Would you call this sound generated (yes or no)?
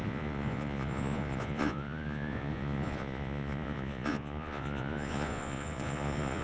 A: yes